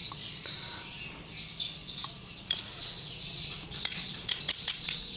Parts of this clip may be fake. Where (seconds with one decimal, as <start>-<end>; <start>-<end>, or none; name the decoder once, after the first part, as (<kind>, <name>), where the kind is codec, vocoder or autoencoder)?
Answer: 0.0-1.0 (vocoder, Vocos); 1.8-5.2